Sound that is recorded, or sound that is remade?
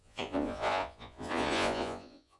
remade